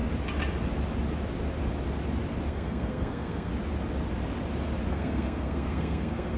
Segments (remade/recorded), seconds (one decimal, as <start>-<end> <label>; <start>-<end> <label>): 0.0-2.5 recorded; 2.5-3.5 remade; 3.5-4.9 recorded; 4.9-6.4 remade